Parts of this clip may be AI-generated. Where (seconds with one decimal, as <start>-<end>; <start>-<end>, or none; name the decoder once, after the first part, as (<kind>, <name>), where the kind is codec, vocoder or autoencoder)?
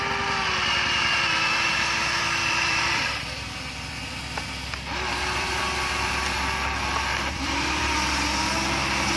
2.4-6.1 (vocoder, BigVGAN v2); 7.1-7.9